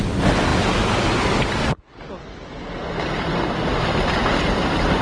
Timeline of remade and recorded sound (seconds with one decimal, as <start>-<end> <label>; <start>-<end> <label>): 0.0-5.0 recorded

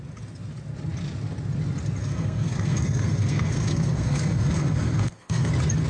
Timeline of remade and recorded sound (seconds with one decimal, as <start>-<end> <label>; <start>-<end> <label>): 0.0-2.0 recorded; 2.0-5.5 remade; 5.5-5.9 recorded

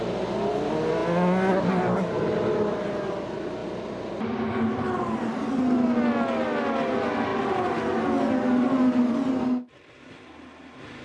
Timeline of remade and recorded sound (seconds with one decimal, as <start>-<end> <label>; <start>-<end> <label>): 0.0-11.0 recorded